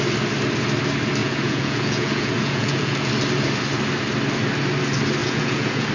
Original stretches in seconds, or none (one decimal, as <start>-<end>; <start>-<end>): 0.0-1.2; 3.1-5.2

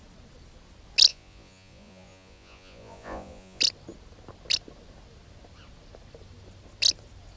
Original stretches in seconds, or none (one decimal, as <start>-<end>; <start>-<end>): 0.0-1.1; 3.6-7.4

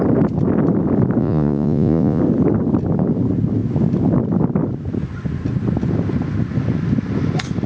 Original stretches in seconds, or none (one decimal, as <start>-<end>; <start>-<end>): 0.0-1.2; 2.2-7.7

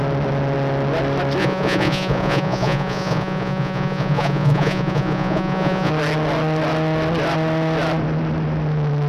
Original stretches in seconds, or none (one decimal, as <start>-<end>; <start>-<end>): 0.0-1.4; 5.9-9.1

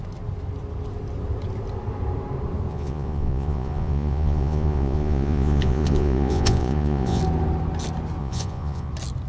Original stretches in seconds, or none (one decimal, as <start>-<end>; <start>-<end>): 0.0-2.7; 7.2-8.2; 8.9-9.3